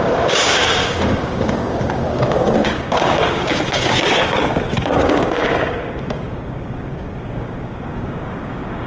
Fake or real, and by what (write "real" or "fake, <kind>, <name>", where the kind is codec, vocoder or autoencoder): fake, codec, DAC